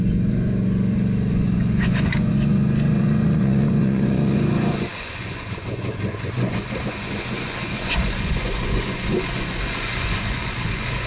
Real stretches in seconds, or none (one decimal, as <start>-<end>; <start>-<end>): none